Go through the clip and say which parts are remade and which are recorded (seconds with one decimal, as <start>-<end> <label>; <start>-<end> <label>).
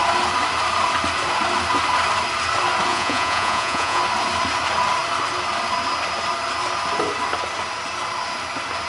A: 0.0-2.9 recorded; 2.9-4.0 remade; 4.0-8.9 recorded